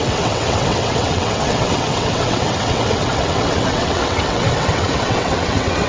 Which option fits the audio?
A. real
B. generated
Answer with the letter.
B